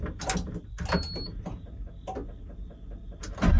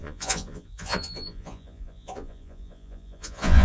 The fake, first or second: second